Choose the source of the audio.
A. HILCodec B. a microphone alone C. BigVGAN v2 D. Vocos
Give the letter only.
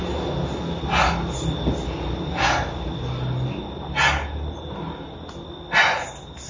B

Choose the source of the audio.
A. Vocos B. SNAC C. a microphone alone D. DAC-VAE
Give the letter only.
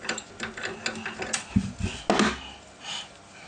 C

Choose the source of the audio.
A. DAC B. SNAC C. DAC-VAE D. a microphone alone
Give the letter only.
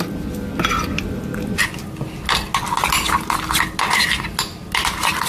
D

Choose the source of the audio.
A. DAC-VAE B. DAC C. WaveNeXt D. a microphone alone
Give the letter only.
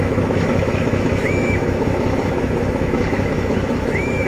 A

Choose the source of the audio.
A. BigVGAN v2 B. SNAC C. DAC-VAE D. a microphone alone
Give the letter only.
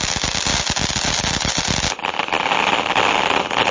D